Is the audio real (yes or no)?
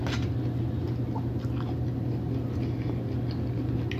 yes